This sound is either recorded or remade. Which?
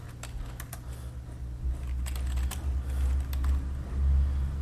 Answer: recorded